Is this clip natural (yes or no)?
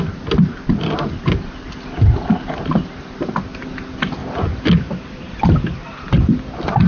yes